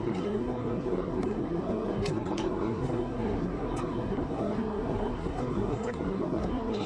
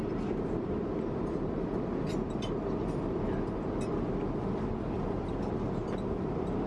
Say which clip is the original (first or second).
second